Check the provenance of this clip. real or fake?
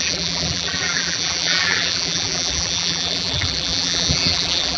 fake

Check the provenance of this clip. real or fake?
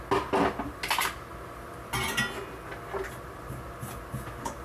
real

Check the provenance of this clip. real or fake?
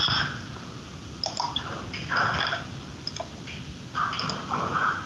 real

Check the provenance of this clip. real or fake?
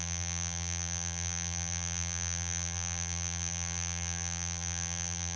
fake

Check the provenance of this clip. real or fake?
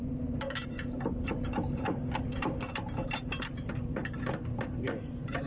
fake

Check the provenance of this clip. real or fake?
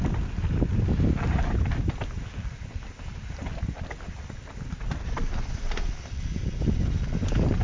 real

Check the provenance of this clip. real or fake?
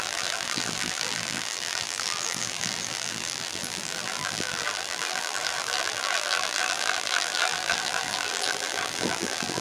fake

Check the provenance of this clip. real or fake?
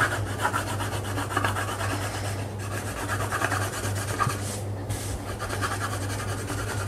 real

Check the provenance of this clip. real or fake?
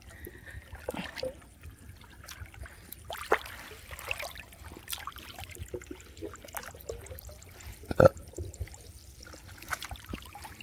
real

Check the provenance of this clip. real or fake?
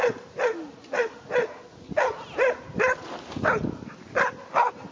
real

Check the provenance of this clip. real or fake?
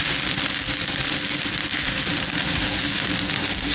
real